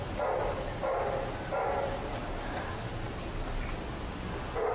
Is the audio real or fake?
real